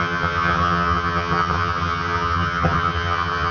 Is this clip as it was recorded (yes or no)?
no